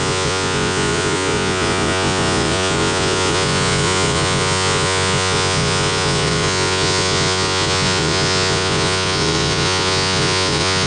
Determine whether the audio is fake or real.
fake